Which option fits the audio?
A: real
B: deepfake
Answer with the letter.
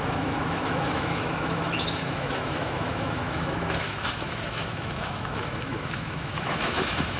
B